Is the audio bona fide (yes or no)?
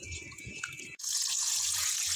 no